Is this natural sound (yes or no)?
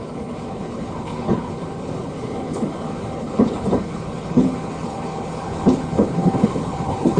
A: no